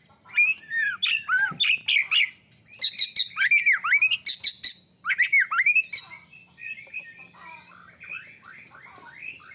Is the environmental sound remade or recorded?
recorded